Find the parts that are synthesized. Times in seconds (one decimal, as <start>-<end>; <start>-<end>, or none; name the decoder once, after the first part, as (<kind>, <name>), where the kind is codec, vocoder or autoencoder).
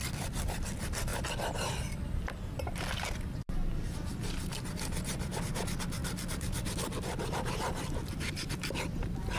none